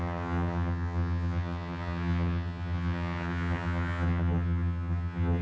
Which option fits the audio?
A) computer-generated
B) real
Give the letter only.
A